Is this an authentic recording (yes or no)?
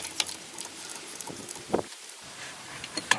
no